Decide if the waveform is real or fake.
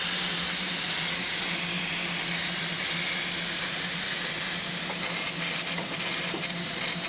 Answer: real